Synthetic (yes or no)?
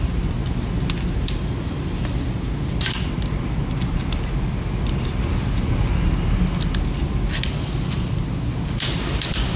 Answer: no